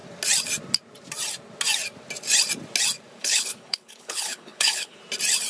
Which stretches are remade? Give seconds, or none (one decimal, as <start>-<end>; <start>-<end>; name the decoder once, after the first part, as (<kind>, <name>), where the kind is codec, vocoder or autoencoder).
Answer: 3.2-5.0 (codec, HILCodec)